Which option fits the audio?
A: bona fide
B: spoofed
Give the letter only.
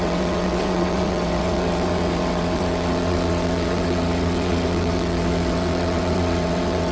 B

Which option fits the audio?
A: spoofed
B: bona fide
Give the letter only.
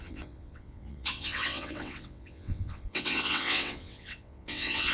A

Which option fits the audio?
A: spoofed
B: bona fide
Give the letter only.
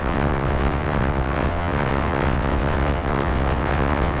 A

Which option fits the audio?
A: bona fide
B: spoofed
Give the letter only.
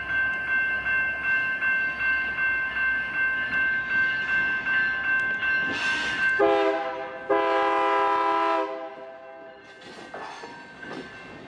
A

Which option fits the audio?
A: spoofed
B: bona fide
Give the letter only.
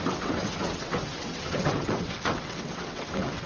A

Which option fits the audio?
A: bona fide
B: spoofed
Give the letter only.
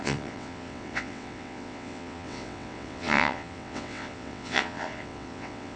B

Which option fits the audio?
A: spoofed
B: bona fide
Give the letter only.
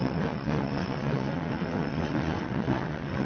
A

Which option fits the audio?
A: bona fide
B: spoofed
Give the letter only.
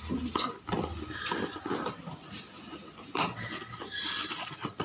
A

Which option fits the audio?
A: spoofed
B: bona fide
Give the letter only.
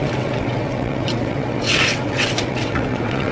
A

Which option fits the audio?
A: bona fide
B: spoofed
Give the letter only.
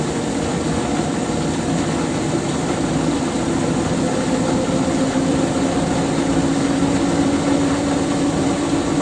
A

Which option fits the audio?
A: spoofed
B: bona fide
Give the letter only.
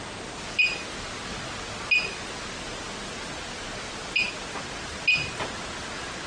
B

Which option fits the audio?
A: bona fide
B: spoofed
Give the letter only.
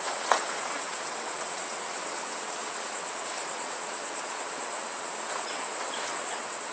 B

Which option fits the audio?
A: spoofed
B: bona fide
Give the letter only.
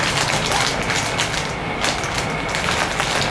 B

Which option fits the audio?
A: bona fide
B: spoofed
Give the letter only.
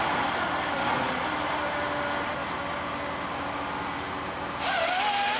A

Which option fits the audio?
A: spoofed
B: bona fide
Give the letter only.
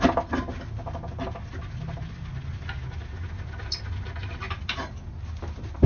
B